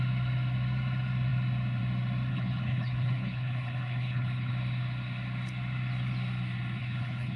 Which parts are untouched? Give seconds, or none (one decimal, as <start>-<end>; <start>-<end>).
0.0-2.3; 4.5-6.8